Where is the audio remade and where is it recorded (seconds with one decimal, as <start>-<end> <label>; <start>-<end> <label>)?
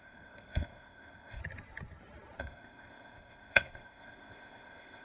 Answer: 0.0-1.4 remade; 1.4-2.4 recorded; 2.4-5.0 remade